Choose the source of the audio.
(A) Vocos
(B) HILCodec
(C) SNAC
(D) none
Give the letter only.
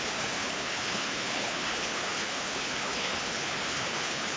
B